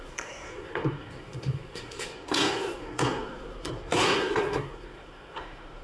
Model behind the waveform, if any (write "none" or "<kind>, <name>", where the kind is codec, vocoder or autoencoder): codec, SNAC